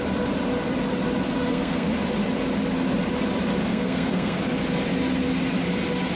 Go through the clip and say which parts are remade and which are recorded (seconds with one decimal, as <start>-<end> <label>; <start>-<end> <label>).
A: 0.0-1.4 recorded; 1.4-1.9 remade; 1.9-3.7 recorded; 3.7-4.4 remade; 4.4-6.2 recorded